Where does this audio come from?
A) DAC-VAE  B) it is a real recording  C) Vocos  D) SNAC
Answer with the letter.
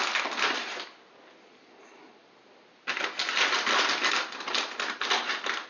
B